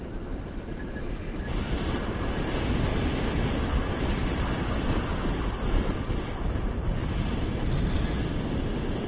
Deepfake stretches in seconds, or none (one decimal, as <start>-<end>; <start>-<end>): none